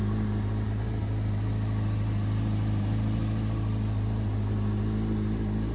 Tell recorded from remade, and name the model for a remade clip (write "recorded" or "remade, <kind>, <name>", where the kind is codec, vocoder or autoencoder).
recorded